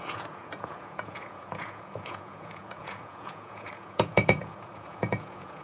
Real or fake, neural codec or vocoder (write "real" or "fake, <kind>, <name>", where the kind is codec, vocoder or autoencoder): fake, vocoder, Vocos